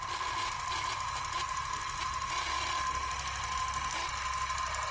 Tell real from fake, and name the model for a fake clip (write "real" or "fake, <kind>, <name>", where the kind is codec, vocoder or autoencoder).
real